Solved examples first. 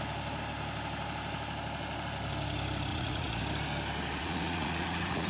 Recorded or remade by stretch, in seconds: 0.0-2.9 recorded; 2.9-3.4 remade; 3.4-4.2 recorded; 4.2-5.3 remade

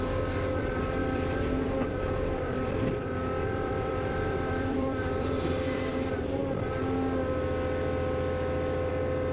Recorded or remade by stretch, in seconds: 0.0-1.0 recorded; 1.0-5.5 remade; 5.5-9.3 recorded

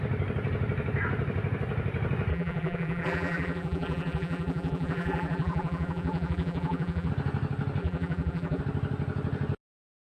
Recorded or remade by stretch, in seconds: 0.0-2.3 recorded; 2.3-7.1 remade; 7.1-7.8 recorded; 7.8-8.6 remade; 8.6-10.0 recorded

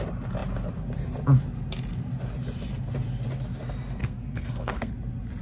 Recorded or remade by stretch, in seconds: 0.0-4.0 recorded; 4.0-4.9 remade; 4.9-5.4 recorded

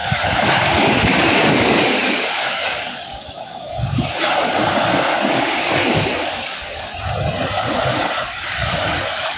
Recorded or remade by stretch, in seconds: 0.0-6.9 remade; 6.9-7.5 recorded; 7.5-9.4 remade